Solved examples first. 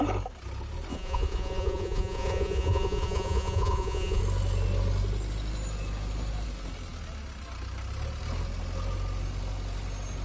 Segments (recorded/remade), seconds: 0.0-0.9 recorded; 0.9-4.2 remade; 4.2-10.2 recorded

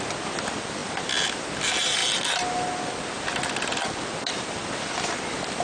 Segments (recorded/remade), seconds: 0.0-5.6 recorded

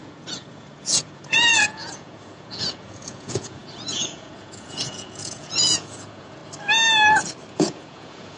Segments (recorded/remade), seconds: 0.0-6.4 remade; 6.4-7.5 recorded; 7.5-8.4 remade

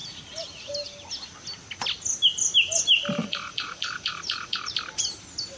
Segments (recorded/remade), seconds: 0.0-0.7 remade; 0.7-3.2 recorded; 3.2-4.7 remade; 4.7-5.6 recorded